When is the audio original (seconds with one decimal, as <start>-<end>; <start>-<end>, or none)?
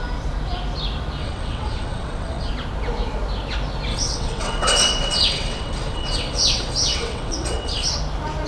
0.0-1.2; 2.5-3.9; 7.9-8.5